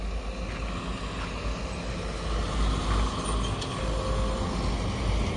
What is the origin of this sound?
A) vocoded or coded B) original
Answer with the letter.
B